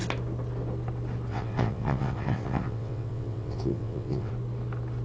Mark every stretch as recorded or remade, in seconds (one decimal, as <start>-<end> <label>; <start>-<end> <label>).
0.0-1.3 recorded; 1.3-4.3 remade; 4.3-5.0 recorded